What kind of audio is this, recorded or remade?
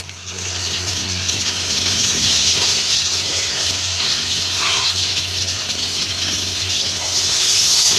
remade